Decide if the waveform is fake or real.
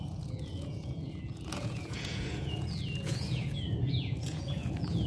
fake